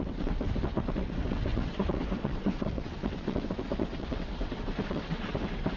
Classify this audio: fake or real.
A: fake